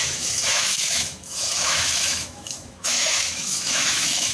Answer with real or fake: fake